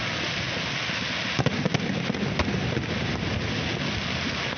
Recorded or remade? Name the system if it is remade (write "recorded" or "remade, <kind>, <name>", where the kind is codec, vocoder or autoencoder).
recorded